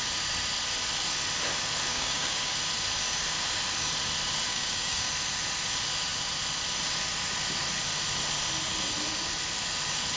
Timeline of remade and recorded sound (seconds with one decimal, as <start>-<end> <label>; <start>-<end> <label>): 0.0-1.9 recorded; 1.9-2.5 remade; 2.5-4.5 recorded; 4.5-5.1 remade; 5.1-10.2 recorded